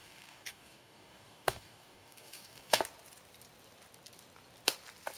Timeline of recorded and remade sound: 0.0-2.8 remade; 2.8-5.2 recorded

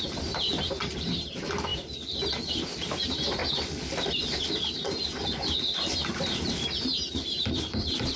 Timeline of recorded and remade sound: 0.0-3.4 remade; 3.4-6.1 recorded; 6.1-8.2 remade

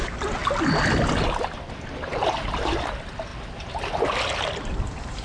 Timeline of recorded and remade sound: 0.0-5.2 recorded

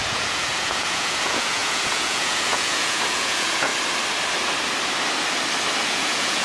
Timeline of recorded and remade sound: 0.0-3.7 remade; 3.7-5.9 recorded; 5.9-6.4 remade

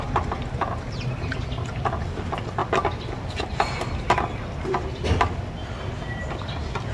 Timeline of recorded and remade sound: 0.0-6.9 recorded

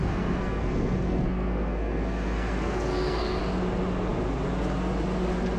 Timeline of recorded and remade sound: 0.0-3.4 remade; 3.4-5.6 recorded

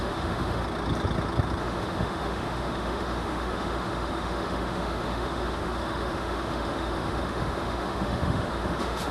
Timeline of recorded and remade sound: 0.0-0.6 remade; 0.6-1.6 recorded; 1.6-9.1 remade